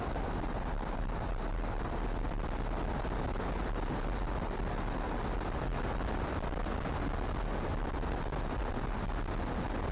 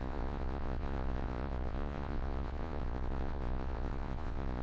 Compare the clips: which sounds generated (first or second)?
second